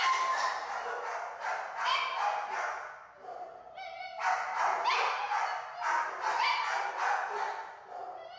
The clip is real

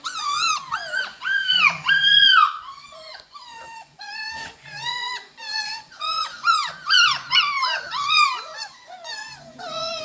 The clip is fake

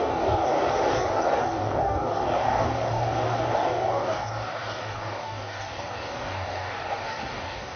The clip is fake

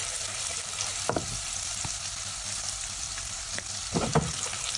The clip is fake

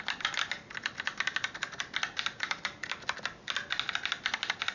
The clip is real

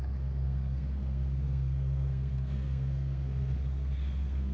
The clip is fake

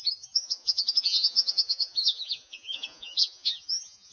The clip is fake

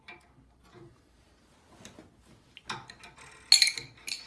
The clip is real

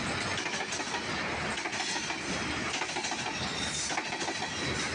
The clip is real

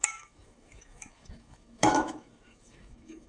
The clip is fake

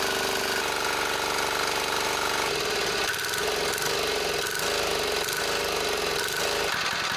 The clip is real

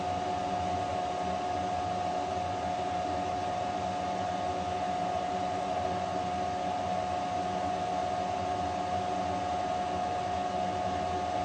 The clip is real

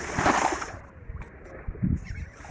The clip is real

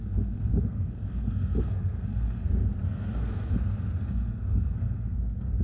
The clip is fake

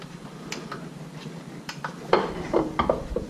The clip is real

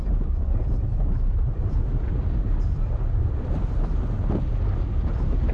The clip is real